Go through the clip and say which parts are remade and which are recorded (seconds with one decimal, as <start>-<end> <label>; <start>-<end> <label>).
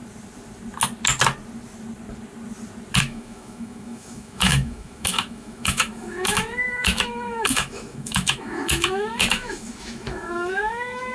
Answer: 0.0-3.0 recorded; 3.0-11.1 remade